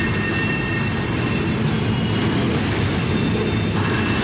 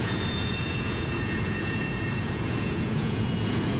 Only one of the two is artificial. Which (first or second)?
second